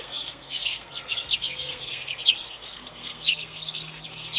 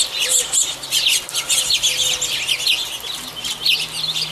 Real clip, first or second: second